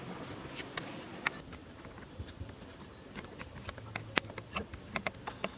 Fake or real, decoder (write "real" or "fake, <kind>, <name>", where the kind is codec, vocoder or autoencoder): real